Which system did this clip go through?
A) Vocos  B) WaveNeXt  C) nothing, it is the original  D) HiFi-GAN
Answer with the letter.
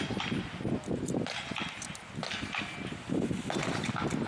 C